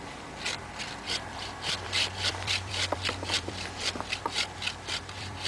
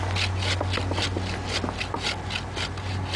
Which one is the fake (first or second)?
first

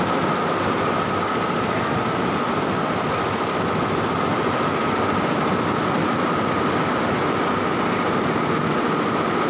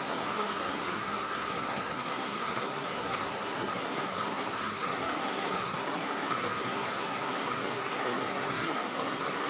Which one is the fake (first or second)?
second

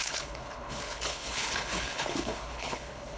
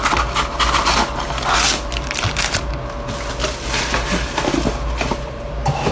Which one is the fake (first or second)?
first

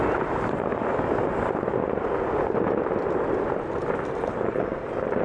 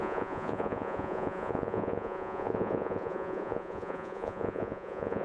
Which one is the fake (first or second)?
second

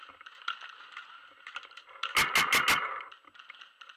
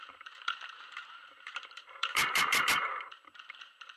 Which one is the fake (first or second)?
second